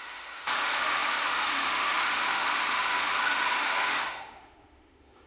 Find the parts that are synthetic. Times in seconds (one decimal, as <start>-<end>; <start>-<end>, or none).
0.0-5.3